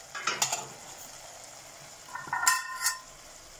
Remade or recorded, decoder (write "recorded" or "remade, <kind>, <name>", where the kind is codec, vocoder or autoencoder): recorded